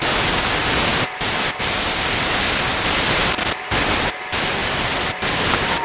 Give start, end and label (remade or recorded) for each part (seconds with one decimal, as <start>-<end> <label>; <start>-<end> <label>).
0.0-5.8 recorded

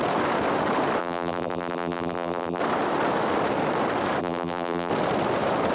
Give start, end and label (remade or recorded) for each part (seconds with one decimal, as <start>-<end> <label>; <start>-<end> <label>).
0.0-1.0 recorded; 1.0-2.6 remade; 2.6-4.2 recorded; 4.2-4.9 remade; 4.9-5.7 recorded